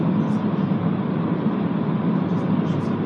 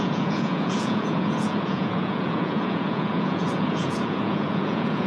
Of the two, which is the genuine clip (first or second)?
first